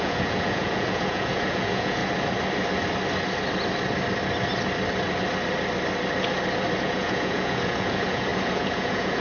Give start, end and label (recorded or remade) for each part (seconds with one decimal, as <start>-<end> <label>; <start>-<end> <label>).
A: 0.0-2.0 remade; 2.0-6.8 recorded; 6.8-9.2 remade